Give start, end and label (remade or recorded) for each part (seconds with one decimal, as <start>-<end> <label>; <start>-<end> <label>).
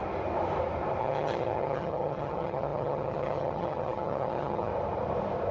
0.0-1.0 recorded; 1.0-4.7 remade; 4.7-5.5 recorded